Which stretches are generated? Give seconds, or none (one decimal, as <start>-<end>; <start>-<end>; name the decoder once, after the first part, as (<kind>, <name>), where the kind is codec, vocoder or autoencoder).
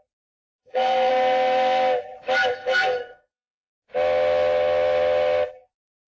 0.6-1.1 (codec, SNAC); 2.5-3.7